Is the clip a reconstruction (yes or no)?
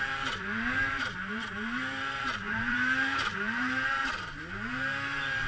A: yes